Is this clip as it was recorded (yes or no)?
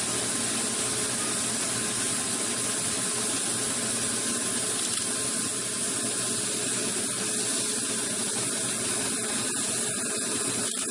yes